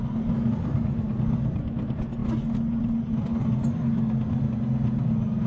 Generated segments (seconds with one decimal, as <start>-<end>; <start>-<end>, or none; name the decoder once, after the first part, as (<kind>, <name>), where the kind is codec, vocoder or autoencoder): none